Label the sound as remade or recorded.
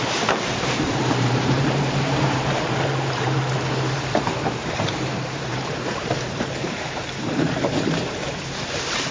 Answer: remade